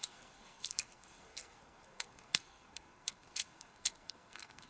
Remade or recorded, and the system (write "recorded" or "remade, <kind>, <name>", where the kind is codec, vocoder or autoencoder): remade, codec, SNAC